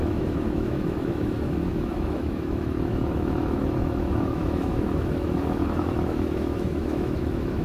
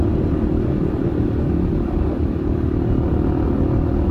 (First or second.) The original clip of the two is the second